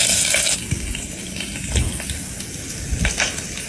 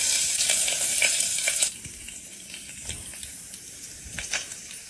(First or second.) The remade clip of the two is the second